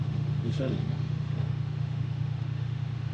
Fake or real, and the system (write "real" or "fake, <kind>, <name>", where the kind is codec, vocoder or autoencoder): fake, autoencoder, DAC-VAE